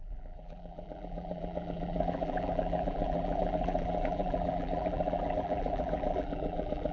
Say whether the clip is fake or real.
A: fake